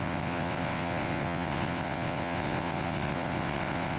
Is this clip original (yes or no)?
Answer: no